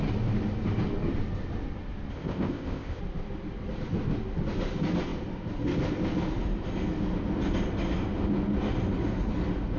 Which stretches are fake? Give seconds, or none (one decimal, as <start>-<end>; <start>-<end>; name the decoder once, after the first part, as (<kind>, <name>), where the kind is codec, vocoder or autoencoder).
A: 2.1-3.0 (codec, ZipCodec)